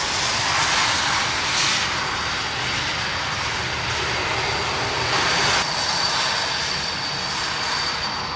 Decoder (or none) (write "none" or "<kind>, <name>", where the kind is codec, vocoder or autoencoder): none